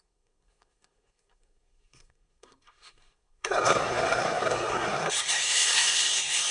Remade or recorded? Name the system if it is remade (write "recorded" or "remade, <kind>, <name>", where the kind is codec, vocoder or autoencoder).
remade, codec, SNAC